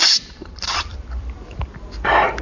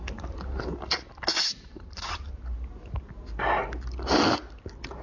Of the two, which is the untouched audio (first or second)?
second